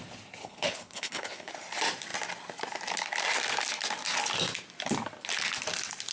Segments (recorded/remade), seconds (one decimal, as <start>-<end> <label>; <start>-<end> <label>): 0.0-0.4 recorded; 0.4-1.5 remade; 1.5-6.1 recorded